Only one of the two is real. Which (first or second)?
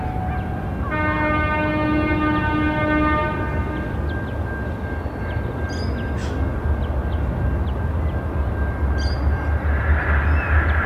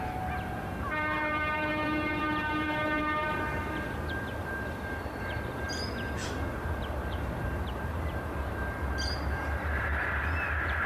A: first